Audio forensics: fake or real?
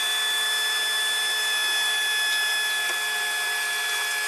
real